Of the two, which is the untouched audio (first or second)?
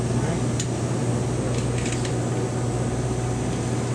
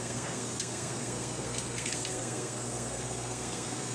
first